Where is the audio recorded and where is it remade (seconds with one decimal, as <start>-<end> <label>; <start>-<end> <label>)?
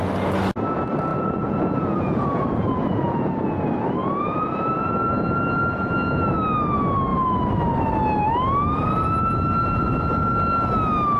0.0-1.1 recorded; 1.1-3.6 remade; 3.6-4.0 recorded; 4.0-5.1 remade; 5.1-11.2 recorded